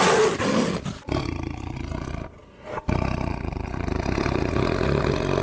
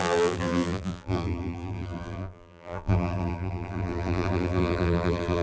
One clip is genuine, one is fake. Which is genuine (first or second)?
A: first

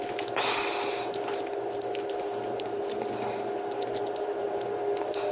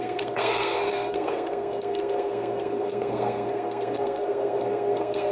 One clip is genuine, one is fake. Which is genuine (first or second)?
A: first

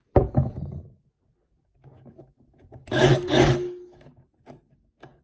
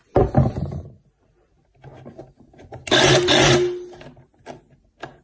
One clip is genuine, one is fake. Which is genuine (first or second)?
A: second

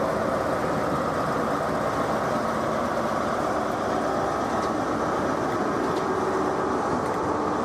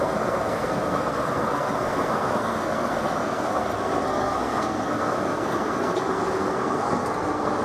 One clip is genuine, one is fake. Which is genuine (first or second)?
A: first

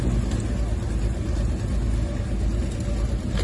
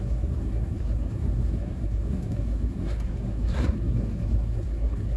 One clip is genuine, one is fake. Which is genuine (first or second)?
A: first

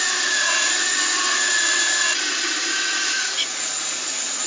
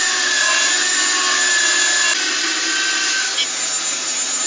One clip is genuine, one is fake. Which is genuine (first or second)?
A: second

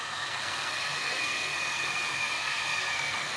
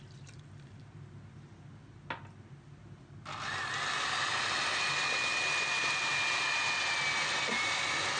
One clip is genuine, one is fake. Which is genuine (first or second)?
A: second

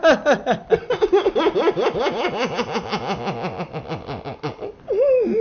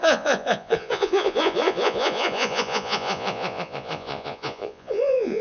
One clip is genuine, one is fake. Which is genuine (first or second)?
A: first